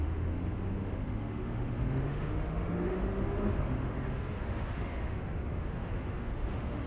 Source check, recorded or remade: remade